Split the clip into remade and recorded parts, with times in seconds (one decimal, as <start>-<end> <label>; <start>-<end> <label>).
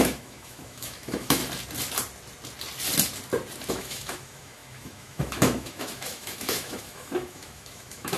0.0-1.4 remade; 1.4-3.7 recorded; 3.7-8.2 remade